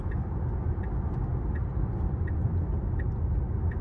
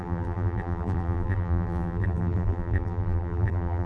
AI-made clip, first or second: second